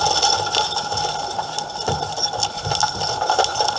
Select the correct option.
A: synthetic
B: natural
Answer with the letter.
B